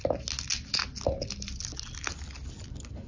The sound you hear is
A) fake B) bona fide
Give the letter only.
B